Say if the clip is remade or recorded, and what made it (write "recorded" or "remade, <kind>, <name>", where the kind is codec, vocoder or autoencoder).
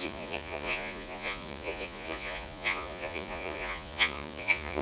remade, vocoder, Vocos